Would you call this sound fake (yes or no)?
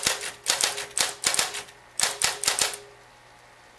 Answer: no